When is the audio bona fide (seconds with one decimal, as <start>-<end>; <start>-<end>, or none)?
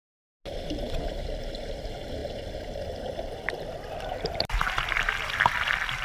0.0-0.9